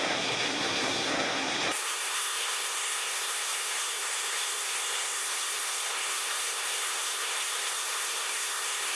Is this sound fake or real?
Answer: fake